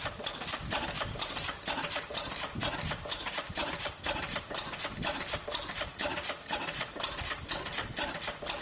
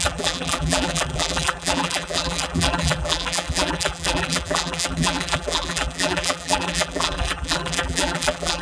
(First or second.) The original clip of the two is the first